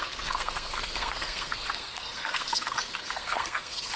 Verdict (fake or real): fake